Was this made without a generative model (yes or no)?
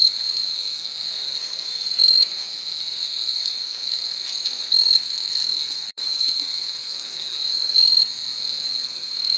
no